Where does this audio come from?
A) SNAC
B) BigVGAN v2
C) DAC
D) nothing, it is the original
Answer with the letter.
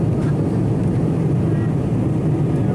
D